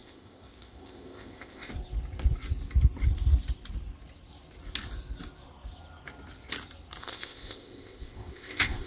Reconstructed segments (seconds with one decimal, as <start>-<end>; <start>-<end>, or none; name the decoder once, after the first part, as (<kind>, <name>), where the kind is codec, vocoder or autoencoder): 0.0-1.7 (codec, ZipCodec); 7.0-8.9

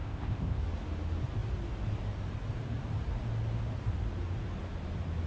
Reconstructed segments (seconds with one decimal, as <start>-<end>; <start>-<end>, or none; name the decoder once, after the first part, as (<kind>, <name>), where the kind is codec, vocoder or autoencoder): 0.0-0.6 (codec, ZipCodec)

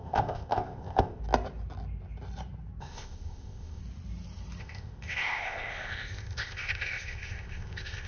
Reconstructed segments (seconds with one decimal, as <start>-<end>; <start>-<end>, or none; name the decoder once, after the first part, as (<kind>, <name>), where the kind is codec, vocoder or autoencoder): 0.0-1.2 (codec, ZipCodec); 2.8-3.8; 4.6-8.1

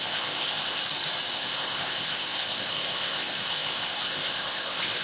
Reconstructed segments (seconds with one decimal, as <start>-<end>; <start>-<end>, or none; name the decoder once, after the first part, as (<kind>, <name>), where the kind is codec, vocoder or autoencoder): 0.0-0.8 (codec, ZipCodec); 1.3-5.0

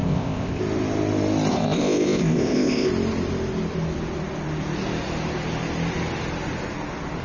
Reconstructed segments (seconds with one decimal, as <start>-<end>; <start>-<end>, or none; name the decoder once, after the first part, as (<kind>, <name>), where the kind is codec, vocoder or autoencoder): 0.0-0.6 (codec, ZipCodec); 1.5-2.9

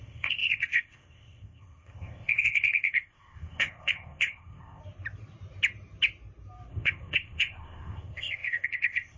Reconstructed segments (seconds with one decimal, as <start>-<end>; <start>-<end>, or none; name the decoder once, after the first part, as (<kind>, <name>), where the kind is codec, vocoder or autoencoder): 0.0-4.8 (codec, ZipCodec); 6.7-9.2

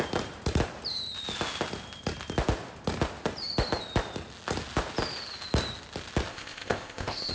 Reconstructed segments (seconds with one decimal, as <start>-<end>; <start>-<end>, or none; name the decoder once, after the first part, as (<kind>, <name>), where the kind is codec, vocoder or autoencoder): 6.3-7.3 (codec, ZipCodec)

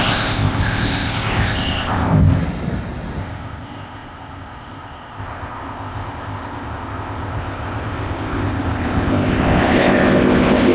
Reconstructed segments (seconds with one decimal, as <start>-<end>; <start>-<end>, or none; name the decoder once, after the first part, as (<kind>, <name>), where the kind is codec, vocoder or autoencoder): 0.0-2.4 (codec, ZipCodec); 3.2-10.7